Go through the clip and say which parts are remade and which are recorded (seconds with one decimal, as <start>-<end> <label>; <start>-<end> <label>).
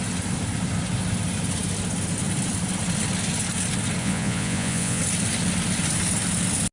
0.0-4.0 recorded; 4.0-5.0 remade; 5.0-6.7 recorded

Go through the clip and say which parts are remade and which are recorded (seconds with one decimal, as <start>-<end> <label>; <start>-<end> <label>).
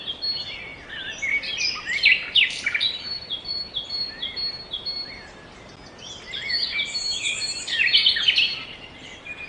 0.0-9.5 recorded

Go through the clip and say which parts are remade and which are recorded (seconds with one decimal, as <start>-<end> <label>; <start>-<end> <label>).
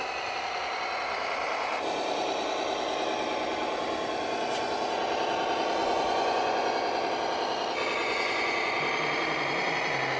0.0-5.8 recorded; 5.8-7.1 remade; 7.1-8.0 recorded; 8.0-8.9 remade; 8.9-10.2 recorded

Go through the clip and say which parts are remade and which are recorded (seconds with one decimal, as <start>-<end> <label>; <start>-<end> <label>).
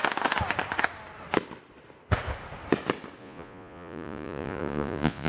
0.0-3.2 recorded; 3.2-5.3 remade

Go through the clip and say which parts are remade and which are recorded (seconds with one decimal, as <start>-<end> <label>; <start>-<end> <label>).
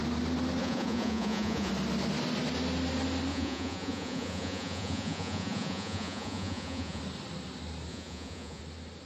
0.0-0.6 recorded; 0.6-1.7 remade; 1.7-3.3 recorded; 3.3-7.0 remade; 7.0-7.9 recorded; 7.9-8.6 remade; 8.6-9.1 recorded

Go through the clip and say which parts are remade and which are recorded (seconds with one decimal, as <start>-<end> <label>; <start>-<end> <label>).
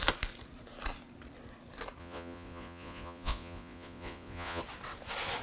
0.0-2.0 recorded; 2.0-4.6 remade; 4.6-5.4 recorded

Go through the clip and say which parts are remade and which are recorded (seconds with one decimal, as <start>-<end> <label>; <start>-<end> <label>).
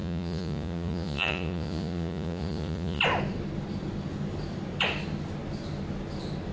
0.0-3.0 remade; 3.0-6.5 recorded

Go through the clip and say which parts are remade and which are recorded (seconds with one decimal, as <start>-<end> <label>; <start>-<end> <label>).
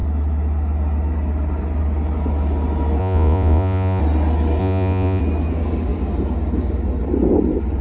0.0-3.0 recorded; 3.0-4.0 remade; 4.0-4.6 recorded; 4.6-5.2 remade; 5.2-7.8 recorded